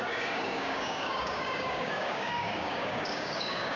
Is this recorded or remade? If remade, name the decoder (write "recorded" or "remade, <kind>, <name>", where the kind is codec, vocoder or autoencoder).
remade, codec, DAC